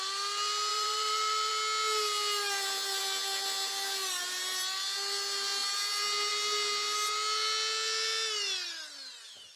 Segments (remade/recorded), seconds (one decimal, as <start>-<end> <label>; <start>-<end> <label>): 0.0-0.7 recorded; 0.7-1.5 remade; 1.5-9.6 recorded